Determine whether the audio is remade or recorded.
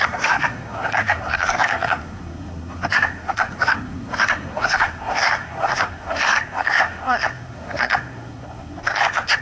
remade